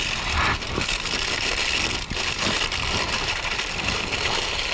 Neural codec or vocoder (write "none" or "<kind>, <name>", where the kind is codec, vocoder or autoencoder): vocoder, BigVGAN v2